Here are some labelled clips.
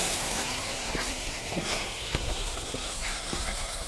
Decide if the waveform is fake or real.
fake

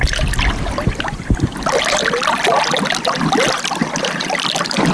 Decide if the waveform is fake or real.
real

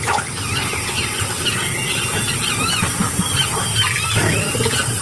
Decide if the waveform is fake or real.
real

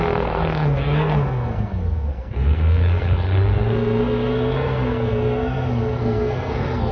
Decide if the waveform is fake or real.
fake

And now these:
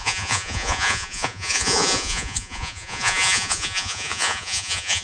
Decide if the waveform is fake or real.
fake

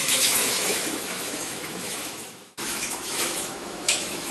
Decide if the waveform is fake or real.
fake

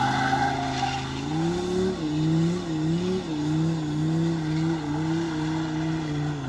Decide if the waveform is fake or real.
real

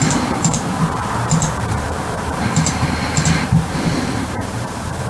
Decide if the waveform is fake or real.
fake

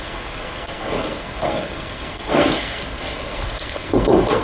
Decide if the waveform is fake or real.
fake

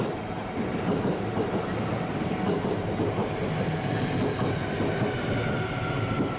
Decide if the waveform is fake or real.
real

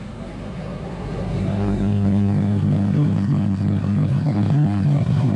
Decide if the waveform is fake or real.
fake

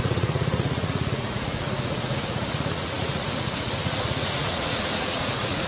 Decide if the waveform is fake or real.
fake